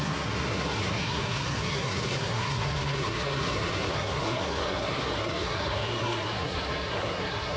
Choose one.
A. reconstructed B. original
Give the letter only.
A